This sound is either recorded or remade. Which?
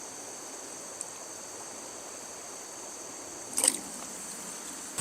recorded